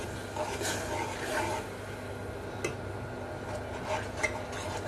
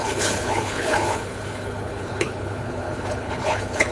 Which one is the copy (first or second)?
second